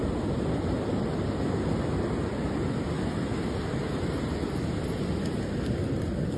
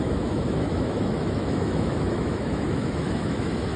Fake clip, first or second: second